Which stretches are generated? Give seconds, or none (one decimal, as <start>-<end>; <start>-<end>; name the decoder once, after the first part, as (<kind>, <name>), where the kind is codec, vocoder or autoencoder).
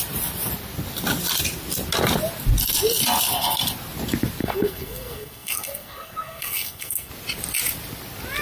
4.4-7.1 (codec, SNAC)